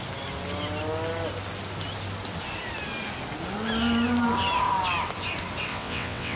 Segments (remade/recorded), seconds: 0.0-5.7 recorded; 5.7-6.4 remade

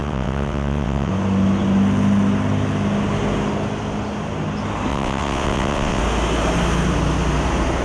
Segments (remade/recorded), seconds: 0.0-1.1 remade; 1.1-4.9 recorded; 4.9-6.0 remade; 6.0-7.8 recorded